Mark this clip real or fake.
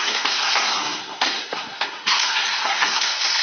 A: fake